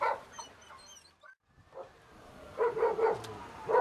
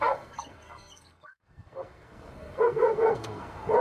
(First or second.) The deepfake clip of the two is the second